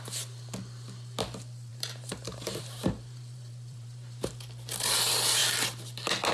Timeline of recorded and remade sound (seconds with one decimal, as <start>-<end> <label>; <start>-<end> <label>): 0.0-1.7 recorded; 1.7-4.3 remade; 4.3-6.3 recorded